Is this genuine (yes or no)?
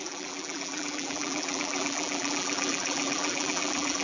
no